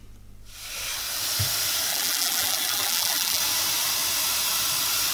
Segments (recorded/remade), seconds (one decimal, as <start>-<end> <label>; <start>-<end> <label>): 0.0-1.9 recorded; 1.9-3.4 remade; 3.4-5.1 recorded